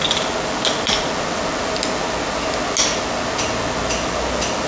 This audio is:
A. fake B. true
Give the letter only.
B